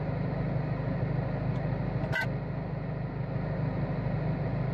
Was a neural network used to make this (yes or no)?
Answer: no